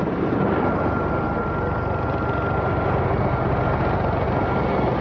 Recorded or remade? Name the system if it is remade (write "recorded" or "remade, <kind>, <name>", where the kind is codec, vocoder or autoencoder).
recorded